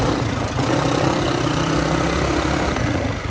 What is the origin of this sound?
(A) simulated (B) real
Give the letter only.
B